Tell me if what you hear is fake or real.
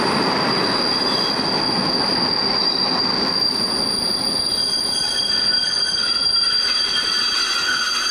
real